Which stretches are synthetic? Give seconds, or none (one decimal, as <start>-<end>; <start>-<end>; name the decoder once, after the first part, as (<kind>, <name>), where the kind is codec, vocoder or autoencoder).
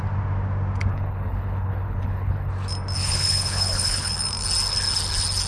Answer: 0.9-2.5 (codec, HILCodec); 3.0-4.1